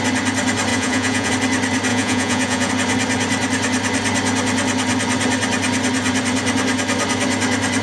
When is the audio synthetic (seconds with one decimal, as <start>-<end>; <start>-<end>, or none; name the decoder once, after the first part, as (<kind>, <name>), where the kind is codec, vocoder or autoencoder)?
0.7-1.3 (vocoder, Vocos); 1.9-2.7